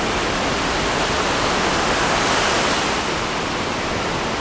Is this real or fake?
real